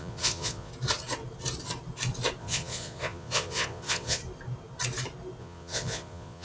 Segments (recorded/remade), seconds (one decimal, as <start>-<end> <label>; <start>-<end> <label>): 0.0-0.7 remade; 0.7-2.4 recorded; 2.4-4.2 remade; 4.2-5.4 recorded; 5.4-6.4 remade